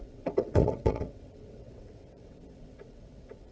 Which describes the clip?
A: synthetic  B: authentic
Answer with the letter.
A